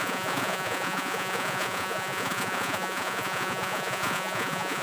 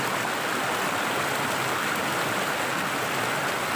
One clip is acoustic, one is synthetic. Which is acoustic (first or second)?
second